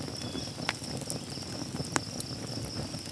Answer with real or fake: real